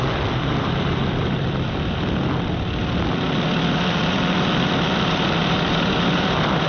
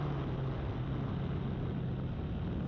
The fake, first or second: first